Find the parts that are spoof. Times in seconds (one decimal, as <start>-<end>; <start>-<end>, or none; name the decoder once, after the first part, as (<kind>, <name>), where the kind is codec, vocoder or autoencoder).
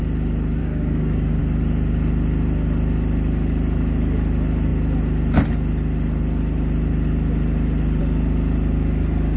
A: 0.6-1.4 (codec, DAC)